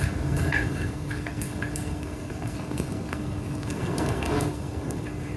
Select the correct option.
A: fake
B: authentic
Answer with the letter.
A